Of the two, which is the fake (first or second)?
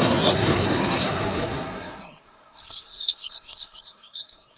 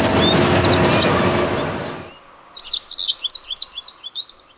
first